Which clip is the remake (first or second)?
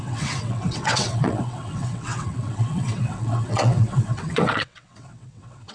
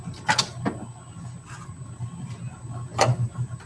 first